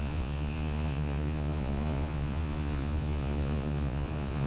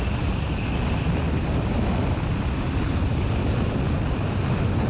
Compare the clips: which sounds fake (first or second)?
first